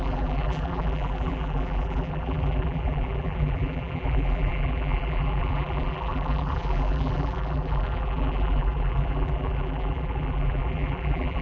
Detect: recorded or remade remade